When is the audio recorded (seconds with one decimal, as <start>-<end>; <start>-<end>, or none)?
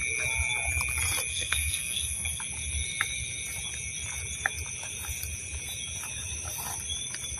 0.0-1.3; 2.4-7.4